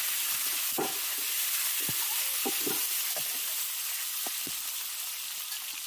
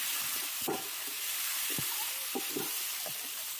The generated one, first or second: second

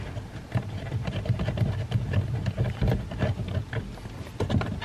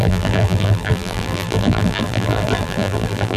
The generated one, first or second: second